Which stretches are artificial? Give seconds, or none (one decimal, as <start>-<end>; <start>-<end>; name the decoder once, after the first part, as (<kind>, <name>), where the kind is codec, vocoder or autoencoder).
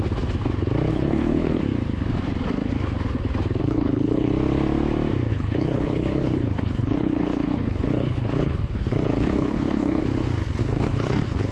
0.9-1.6 (codec, HILCodec); 3.6-4.3; 5.3-10.0; 10.6-11.5